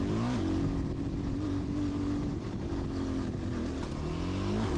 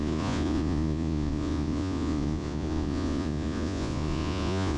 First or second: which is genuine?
first